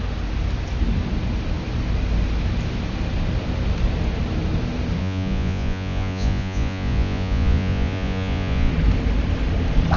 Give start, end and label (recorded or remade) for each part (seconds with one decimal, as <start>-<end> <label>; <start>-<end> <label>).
0.0-5.0 recorded; 5.0-8.7 remade; 8.7-10.0 recorded